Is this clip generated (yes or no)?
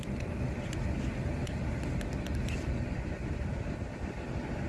no